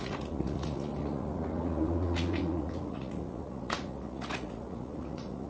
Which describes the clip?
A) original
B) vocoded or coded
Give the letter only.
B